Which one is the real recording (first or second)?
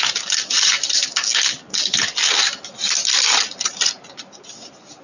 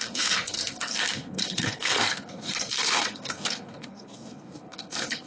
first